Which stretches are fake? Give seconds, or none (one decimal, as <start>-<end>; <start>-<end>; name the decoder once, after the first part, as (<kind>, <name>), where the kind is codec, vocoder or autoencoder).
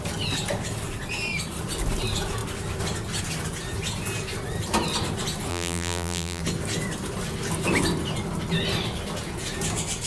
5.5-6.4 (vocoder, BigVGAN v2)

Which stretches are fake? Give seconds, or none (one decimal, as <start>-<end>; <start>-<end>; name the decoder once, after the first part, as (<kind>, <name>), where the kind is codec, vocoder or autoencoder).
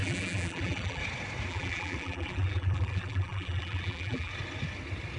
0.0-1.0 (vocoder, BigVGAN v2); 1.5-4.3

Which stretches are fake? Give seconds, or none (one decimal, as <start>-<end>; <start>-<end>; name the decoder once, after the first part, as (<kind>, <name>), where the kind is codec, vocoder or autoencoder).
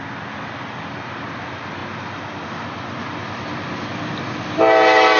none